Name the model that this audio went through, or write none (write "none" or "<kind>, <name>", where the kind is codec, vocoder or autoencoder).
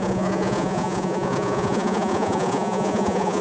vocoder, Vocos